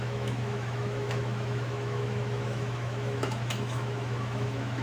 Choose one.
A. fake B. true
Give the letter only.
A